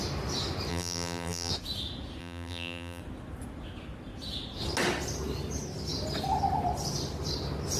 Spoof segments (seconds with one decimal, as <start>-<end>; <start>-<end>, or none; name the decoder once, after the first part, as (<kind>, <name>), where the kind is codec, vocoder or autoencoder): 0.7-1.5 (vocoder, BigVGAN v2); 2.2-3.0